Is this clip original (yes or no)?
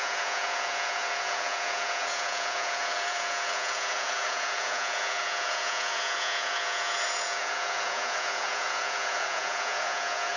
no